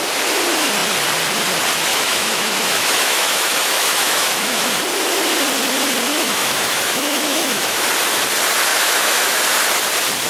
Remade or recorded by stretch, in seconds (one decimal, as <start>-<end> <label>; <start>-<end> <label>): 0.0-1.9 recorded; 1.9-4.7 remade; 4.7-6.1 recorded; 6.1-7.9 remade; 7.9-8.7 recorded; 8.7-9.4 remade; 9.4-10.3 recorded